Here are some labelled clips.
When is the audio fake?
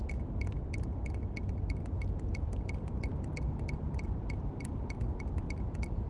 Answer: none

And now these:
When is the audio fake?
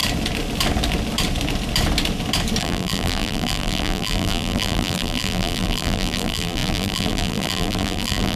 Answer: 2.6-8.4 (vocoder, BigVGAN v2)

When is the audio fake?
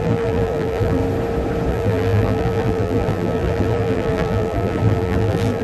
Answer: 0.0-1.0 (vocoder, BigVGAN v2); 1.7-5.6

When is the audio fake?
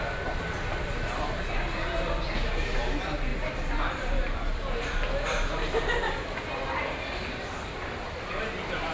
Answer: none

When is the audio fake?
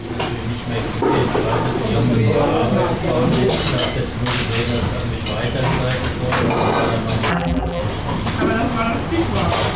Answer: 7.3-7.8 (vocoder, BigVGAN v2)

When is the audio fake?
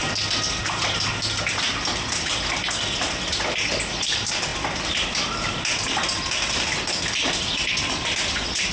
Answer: none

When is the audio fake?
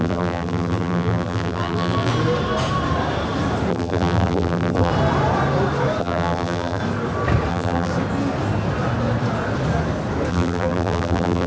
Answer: 0.0-2.1 (vocoder, BigVGAN v2); 3.7-4.9; 6.0-6.8; 7.5-7.9; 10.3-11.5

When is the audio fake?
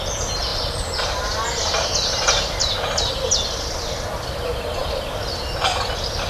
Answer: 0.5-1.1 (vocoder, BigVGAN v2)